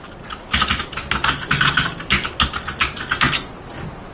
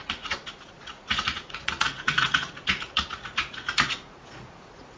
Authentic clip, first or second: first